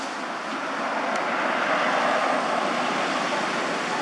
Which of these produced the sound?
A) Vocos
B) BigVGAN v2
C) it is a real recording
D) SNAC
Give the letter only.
C